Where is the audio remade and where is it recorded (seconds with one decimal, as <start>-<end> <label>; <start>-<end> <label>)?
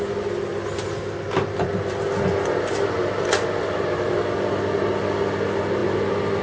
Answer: 0.0-6.4 recorded